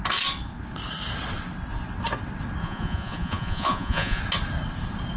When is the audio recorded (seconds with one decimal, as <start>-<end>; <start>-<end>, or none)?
0.0-2.6; 4.2-5.2